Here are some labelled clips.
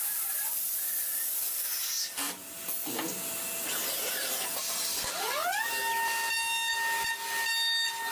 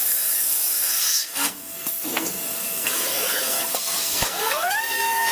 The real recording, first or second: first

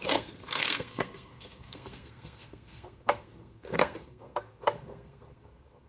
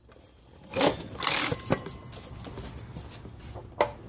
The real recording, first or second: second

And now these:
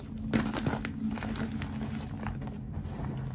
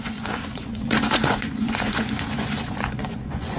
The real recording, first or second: first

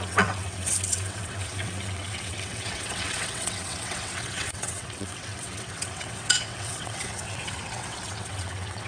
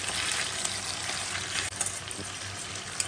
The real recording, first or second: second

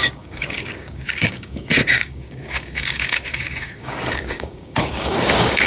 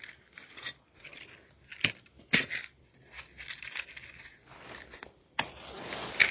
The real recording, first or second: second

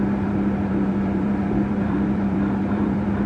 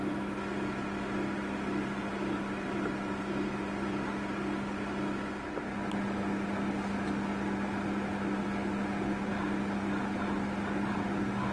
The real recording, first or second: second